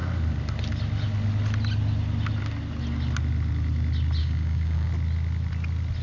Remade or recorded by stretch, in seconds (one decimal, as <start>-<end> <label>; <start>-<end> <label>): 0.0-4.2 recorded; 4.2-4.9 remade; 4.9-6.0 recorded